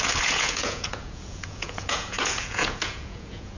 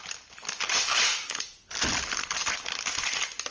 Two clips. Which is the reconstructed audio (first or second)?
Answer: first